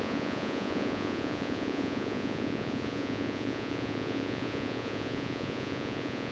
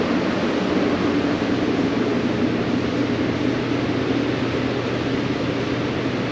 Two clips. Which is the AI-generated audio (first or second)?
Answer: first